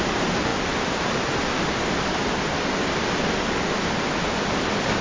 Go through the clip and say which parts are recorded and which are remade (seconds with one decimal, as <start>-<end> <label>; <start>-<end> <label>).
0.0-0.5 recorded; 0.5-1.4 remade; 1.4-5.0 recorded